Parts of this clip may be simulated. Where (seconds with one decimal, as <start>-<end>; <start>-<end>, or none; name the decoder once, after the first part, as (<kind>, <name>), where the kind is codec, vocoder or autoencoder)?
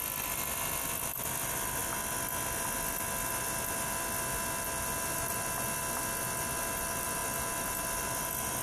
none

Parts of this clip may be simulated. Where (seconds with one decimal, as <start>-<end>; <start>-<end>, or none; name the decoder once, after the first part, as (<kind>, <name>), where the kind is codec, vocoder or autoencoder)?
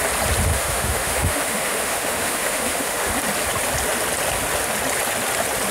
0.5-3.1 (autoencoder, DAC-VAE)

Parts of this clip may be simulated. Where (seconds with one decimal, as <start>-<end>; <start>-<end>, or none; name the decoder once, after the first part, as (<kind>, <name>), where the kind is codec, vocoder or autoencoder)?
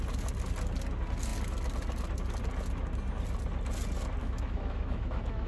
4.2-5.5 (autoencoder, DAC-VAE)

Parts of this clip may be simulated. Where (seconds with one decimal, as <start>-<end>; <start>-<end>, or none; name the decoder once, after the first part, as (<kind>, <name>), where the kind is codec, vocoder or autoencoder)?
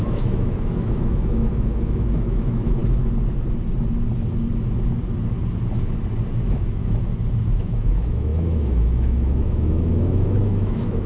0.0-2.8 (autoencoder, DAC-VAE); 6.5-7.1; 7.6-11.1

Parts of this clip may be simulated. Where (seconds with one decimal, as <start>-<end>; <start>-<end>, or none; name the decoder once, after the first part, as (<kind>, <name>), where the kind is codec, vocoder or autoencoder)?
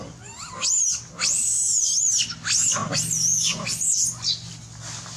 none